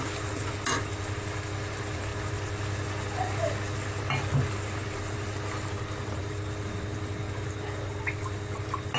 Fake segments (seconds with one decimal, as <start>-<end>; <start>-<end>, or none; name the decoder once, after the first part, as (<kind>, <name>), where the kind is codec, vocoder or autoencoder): none